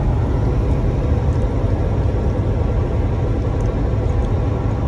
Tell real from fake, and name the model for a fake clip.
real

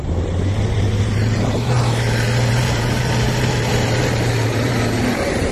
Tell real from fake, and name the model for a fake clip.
fake, vocoder, BigVGAN v2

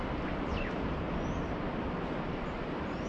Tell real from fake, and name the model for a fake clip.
real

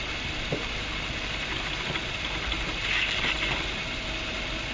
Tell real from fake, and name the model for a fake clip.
real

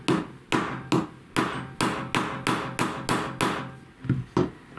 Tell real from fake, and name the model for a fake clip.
real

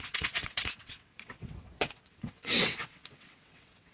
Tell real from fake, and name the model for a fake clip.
fake, vocoder, WaveNeXt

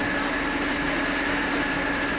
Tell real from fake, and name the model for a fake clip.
real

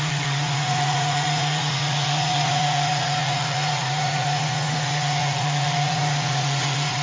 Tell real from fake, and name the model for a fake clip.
fake, vocoder, Vocos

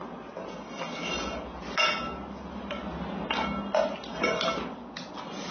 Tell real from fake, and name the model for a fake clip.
real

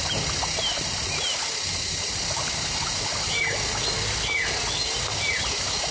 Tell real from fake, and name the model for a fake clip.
real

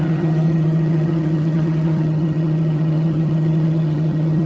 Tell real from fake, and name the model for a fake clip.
fake, vocoder, HiFi-GAN